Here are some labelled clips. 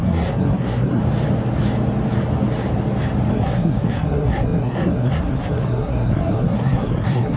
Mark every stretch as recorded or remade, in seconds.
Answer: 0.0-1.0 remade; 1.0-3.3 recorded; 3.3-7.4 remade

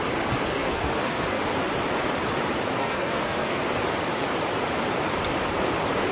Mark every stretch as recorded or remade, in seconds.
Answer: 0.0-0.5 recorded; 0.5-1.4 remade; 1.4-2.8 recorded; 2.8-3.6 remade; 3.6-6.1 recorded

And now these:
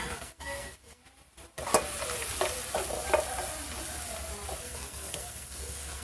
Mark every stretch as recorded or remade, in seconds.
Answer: 0.0-1.0 remade; 1.0-4.6 recorded; 4.6-6.0 remade

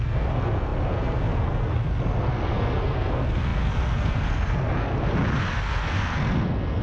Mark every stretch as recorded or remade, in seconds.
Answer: 0.0-4.9 remade; 4.9-5.5 recorded; 5.5-6.8 remade